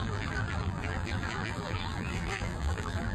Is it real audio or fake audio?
fake